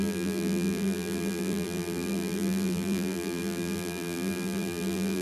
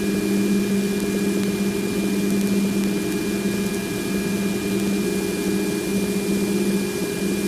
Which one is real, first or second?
second